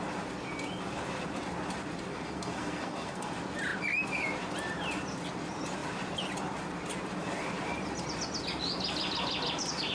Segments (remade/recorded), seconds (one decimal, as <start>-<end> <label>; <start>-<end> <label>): 0.0-2.1 recorded; 2.1-3.3 remade; 3.3-9.9 recorded